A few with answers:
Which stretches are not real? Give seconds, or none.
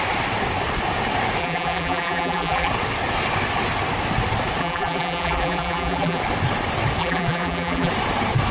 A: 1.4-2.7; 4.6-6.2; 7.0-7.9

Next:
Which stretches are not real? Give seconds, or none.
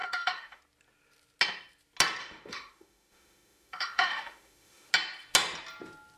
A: 0.0-0.6; 2.2-4.9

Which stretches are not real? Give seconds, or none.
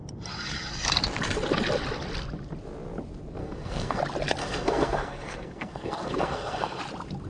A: 3.4-4.0; 4.4-6.8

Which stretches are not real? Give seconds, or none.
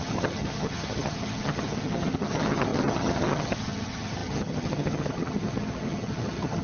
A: 0.0-6.6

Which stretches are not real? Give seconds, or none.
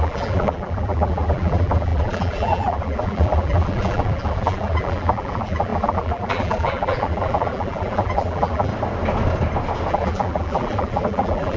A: 0.0-8.7; 9.9-11.6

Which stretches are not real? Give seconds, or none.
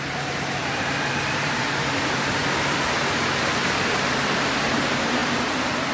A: none